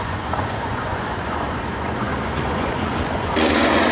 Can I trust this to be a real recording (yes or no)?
no